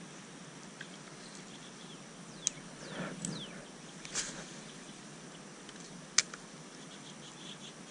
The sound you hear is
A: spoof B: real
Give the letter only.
B